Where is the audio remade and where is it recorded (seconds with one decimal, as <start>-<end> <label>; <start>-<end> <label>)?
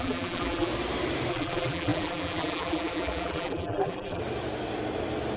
0.0-0.7 remade; 0.7-1.3 recorded; 1.3-4.2 remade; 4.2-5.4 recorded